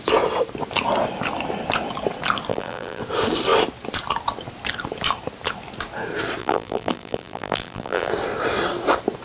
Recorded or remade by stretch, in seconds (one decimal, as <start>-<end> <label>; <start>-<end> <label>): 0.0-2.5 recorded; 2.5-3.0 remade; 3.0-6.4 recorded; 6.4-8.1 remade; 8.1-9.2 recorded